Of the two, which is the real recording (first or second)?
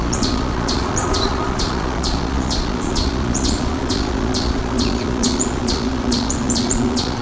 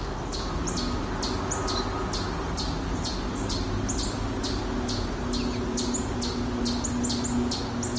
second